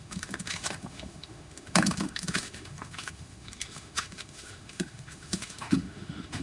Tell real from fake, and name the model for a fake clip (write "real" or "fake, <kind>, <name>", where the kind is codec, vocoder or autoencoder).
fake, autoencoder, DAC-VAE